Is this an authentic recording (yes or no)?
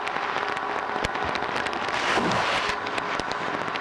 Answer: yes